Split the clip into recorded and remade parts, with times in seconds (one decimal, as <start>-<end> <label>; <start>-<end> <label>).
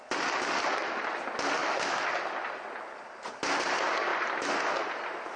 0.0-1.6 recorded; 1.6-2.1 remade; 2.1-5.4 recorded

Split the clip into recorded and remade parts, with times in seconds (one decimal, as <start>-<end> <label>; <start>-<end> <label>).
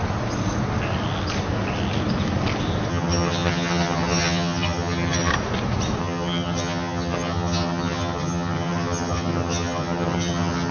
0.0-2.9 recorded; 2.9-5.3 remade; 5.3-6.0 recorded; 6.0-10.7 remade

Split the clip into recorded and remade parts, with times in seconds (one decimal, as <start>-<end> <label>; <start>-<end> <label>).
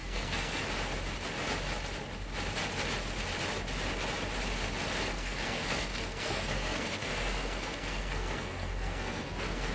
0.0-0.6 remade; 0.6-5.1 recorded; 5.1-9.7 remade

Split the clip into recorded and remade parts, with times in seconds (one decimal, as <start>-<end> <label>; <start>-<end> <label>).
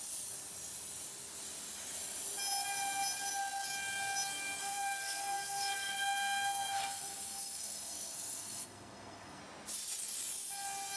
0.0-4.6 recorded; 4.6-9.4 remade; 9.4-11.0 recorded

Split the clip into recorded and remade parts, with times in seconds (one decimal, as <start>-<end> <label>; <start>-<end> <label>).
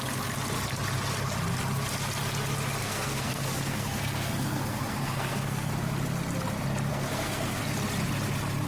0.0-2.8 recorded; 2.8-5.7 remade; 5.7-6.9 recorded; 6.9-7.6 remade; 7.6-8.7 recorded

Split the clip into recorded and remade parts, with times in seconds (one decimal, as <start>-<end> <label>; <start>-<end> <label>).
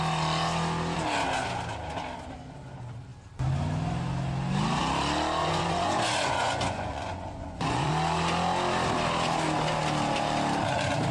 0.0-5.4 recorded; 5.4-7.9 remade; 7.9-11.1 recorded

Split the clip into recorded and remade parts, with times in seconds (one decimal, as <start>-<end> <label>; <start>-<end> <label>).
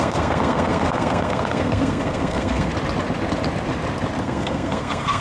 0.0-2.7 remade; 2.7-4.2 recorded; 4.2-5.2 remade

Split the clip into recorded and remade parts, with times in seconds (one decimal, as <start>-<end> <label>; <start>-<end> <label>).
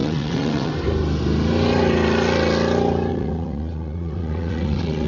0.0-0.7 remade; 0.7-3.1 recorded; 3.1-5.1 remade